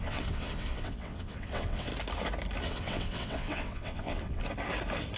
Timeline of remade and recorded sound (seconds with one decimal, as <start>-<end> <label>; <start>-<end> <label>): 0.0-1.9 remade; 1.9-2.6 recorded; 2.6-4.4 remade; 4.4-5.2 recorded